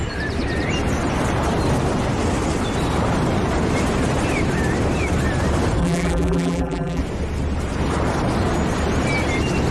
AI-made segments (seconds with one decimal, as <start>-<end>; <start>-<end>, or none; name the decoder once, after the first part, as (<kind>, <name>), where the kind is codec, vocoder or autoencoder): 5.8-7.0 (vocoder, BigVGAN v2)